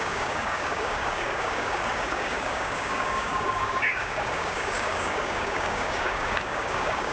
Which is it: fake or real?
fake